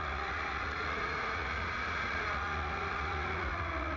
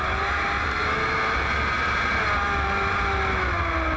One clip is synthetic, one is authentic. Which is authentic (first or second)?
second